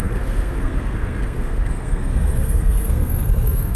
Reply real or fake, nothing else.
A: fake